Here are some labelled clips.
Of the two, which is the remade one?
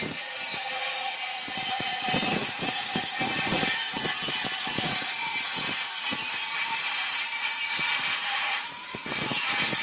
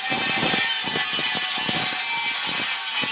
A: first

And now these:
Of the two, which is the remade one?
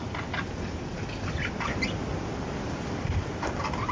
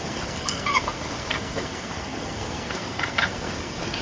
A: second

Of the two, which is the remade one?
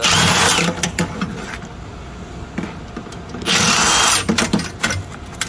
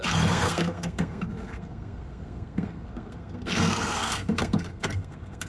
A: second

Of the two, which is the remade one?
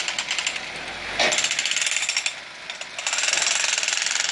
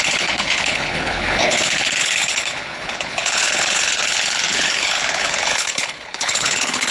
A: second